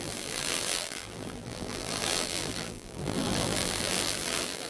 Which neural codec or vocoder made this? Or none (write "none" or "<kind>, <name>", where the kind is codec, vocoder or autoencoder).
vocoder, BigVGAN v2